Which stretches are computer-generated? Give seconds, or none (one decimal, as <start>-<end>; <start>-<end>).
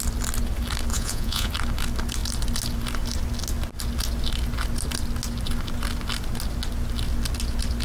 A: 0.9-1.5